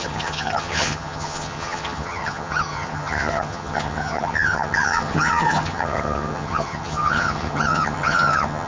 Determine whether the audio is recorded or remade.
remade